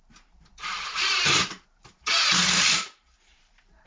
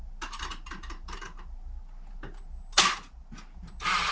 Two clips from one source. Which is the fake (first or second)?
first